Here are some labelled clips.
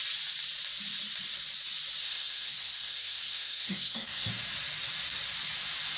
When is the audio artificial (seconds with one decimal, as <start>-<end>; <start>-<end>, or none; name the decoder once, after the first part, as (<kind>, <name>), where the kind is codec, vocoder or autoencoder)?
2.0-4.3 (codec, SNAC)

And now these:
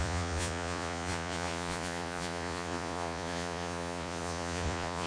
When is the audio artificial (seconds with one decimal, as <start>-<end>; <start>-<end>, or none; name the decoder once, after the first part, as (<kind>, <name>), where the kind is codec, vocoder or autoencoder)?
0.0-5.1 (vocoder, Vocos)

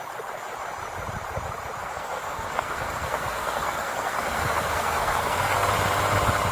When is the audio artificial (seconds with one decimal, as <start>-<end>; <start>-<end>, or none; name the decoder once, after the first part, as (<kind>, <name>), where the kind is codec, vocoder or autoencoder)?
1.8-5.7 (codec, SNAC)